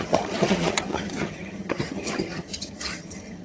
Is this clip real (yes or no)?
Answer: no